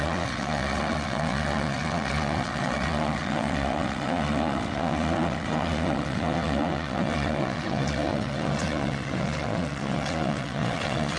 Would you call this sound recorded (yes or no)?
no